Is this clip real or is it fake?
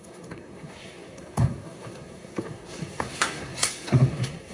fake